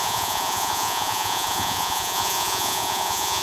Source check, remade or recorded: remade